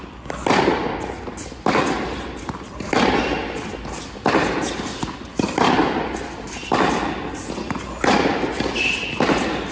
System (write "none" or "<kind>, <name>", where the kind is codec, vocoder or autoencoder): none